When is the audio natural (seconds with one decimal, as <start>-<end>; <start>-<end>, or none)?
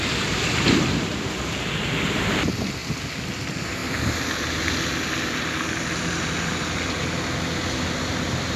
0.0-8.6